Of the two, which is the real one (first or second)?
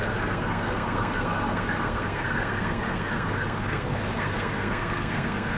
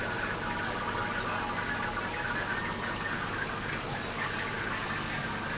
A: second